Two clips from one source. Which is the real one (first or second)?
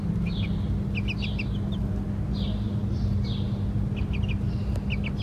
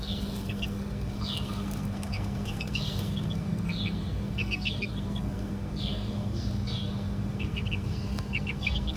first